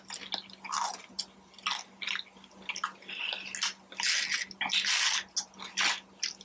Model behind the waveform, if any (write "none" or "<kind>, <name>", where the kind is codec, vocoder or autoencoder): none